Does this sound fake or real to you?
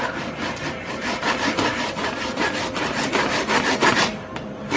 fake